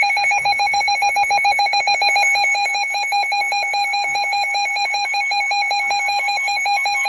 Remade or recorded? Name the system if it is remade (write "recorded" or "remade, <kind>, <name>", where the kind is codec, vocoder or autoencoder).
remade, codec, DAC